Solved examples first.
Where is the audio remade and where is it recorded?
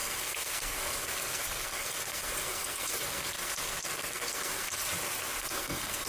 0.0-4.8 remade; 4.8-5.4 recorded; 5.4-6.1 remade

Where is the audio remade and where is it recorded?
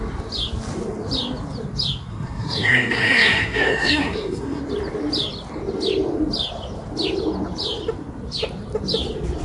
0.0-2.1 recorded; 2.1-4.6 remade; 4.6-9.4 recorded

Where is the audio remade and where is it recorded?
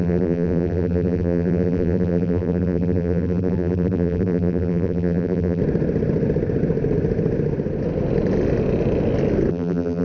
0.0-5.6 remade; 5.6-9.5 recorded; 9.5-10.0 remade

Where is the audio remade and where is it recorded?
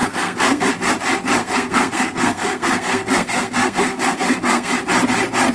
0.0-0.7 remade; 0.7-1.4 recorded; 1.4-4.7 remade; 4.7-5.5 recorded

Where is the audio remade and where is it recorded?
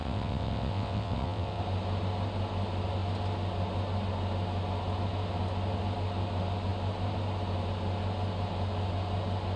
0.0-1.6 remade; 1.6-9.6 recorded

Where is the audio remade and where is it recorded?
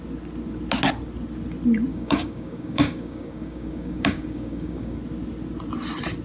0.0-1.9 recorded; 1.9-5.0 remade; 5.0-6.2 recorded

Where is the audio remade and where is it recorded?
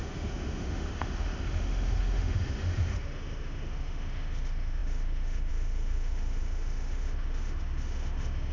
0.0-8.5 remade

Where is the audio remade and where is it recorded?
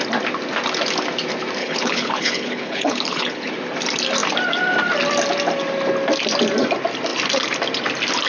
0.0-1.6 recorded; 1.6-3.5 remade; 3.5-8.3 recorded